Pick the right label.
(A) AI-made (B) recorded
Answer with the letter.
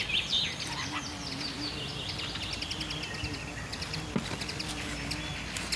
B